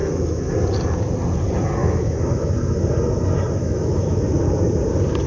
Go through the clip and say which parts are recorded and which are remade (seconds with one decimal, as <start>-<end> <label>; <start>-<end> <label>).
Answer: 0.0-0.5 remade; 0.5-1.8 recorded; 1.8-2.5 remade; 2.5-3.6 recorded; 3.6-4.2 remade; 4.2-5.3 recorded